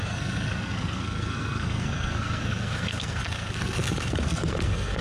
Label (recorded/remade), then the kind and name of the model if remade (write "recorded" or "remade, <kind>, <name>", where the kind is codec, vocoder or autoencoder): remade, codec, SNAC